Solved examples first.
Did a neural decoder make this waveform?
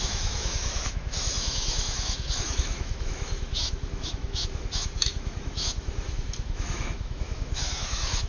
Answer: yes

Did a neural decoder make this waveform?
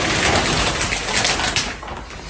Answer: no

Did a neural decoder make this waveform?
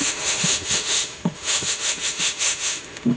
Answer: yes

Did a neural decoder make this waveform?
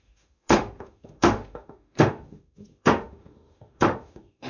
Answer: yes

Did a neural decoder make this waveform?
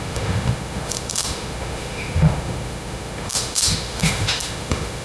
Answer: yes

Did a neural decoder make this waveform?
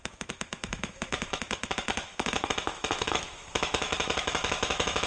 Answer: yes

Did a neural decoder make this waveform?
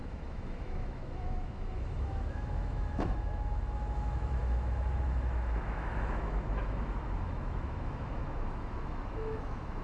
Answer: yes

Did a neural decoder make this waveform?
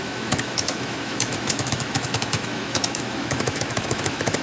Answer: yes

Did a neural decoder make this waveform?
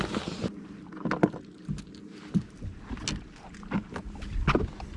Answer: no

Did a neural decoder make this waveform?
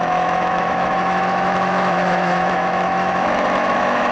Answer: yes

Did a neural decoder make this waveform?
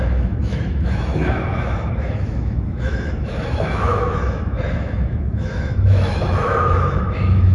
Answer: yes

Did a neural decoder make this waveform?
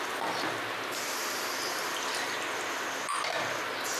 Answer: no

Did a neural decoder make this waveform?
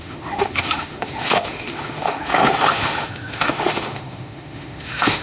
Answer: yes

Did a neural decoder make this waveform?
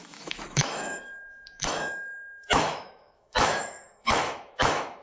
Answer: yes